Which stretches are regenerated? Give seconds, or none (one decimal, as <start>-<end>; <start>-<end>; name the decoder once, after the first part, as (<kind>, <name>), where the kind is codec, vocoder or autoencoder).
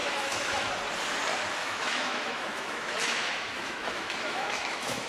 0.0-0.7 (autoencoder, DAC-VAE); 1.6-5.1